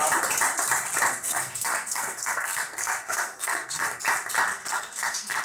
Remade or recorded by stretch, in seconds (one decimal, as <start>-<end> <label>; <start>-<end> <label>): 0.0-1.1 recorded; 1.1-4.0 remade; 4.0-4.5 recorded; 4.5-5.4 remade